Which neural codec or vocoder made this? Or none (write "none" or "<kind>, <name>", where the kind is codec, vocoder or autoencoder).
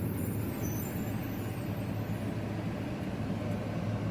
none